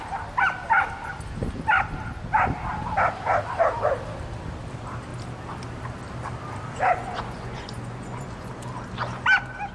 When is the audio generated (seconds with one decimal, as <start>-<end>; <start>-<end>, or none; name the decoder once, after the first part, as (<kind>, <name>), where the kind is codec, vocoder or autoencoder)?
7.0-8.5 (vocoder, Vocos)